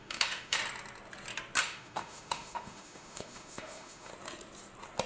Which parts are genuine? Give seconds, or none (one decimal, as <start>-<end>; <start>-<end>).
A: 0.6-1.6; 4.1-5.1